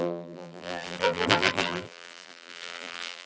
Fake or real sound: fake